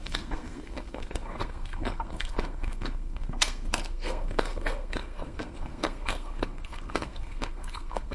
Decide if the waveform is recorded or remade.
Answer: remade